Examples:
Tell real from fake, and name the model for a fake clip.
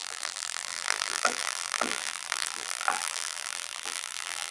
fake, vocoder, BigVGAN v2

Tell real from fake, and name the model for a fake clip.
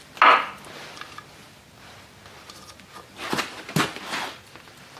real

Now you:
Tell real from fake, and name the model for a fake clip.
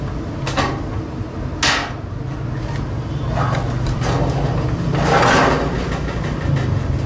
real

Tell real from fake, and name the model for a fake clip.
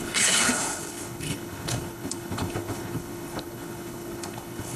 fake, codec, HILCodec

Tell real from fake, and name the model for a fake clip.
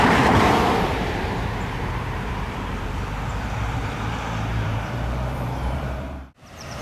fake, vocoder, BigVGAN v2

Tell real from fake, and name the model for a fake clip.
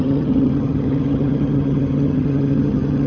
fake, vocoder, HiFi-GAN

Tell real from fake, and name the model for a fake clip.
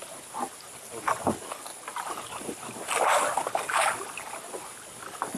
real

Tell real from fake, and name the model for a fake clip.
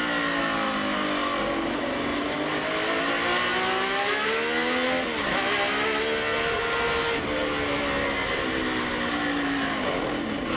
real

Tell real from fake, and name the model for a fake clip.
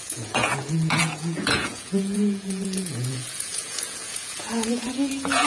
fake, vocoder, Vocos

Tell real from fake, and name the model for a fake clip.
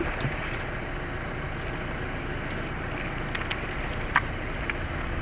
real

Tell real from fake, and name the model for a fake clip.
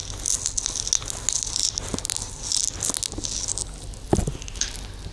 real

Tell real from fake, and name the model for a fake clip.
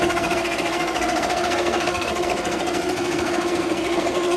fake, codec, SNAC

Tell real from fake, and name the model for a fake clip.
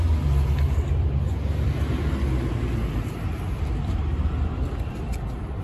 real